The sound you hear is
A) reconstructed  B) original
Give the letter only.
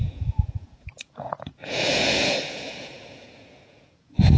A